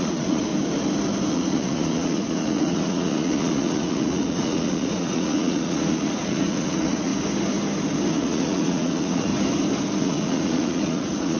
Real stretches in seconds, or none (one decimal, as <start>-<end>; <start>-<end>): 0.5-1.3; 7.1-8.1; 9.3-10.0